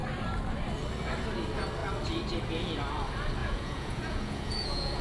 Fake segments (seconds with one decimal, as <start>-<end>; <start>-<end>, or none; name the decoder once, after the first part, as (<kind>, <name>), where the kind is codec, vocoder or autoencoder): 3.4-5.0 (vocoder, Vocos)